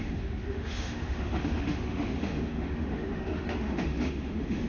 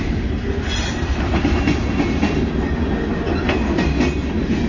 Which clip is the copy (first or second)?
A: first